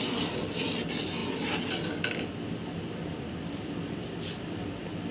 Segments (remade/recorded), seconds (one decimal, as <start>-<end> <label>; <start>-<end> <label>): 0.0-5.1 recorded